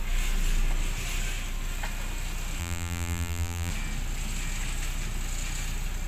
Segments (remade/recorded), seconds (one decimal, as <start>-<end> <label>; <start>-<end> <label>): 0.0-2.6 recorded; 2.6-3.7 remade; 3.7-6.1 recorded